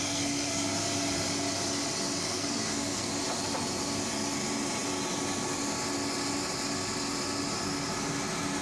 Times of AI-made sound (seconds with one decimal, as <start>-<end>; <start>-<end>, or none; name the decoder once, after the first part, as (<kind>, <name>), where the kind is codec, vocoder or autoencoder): 0.0-0.7 (codec, SNAC); 2.2-3.1